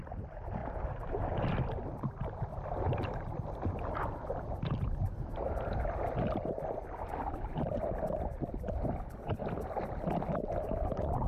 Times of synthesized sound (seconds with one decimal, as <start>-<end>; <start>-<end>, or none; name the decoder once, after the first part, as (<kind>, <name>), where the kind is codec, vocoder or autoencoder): 0.6-1.2 (vocoder, BigVGAN v2); 2.5-7.7